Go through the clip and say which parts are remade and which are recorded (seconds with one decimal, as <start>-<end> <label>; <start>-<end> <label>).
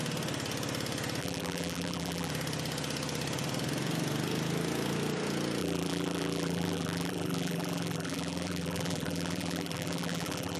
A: 0.0-1.2 recorded; 1.2-2.3 remade; 2.3-5.6 recorded; 5.6-10.6 remade